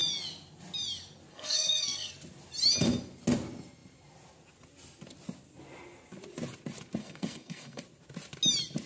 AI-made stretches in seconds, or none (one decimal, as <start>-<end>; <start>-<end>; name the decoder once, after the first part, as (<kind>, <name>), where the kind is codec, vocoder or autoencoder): 1.3-2.1 (codec, SNAC); 7.0-7.8